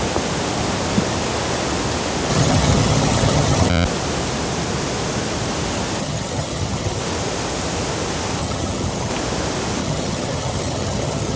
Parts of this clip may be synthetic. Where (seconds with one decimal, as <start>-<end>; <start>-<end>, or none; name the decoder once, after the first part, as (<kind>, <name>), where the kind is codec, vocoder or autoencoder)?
2.3-3.7 (vocoder, HiFi-GAN); 6.0-7.0; 8.4-9.1; 9.8-11.4